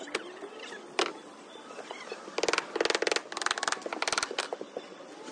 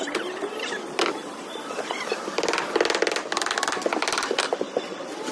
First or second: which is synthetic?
second